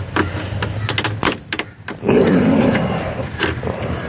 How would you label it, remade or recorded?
recorded